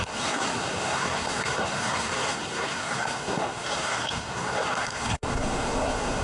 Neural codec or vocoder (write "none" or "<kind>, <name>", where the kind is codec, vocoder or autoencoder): codec, SNAC